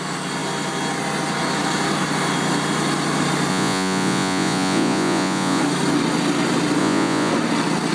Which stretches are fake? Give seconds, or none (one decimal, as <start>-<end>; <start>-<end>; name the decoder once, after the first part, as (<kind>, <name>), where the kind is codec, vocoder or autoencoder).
3.5-5.6 (vocoder, Vocos); 6.8-7.3